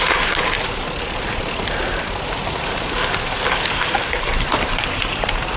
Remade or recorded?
remade